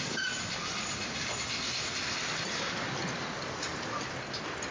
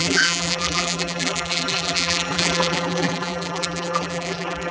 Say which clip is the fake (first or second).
second